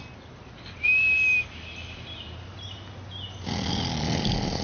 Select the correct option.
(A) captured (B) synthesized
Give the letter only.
A